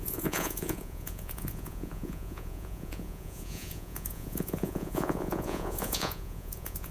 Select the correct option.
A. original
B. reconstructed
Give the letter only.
B